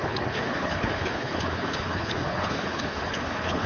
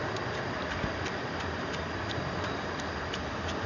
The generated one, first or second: first